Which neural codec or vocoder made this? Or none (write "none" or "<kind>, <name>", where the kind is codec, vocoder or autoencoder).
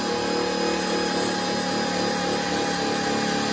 none